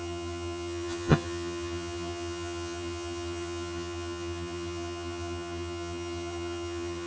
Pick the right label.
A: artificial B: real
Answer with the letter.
A